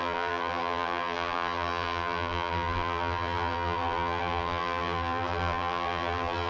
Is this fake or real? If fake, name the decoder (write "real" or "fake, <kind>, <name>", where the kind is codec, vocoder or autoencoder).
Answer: fake, vocoder, BigVGAN v2